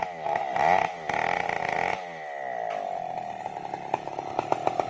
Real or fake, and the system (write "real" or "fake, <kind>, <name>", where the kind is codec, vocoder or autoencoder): real